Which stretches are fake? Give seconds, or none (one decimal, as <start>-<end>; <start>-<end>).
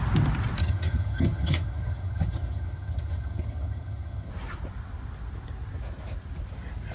0.6-4.3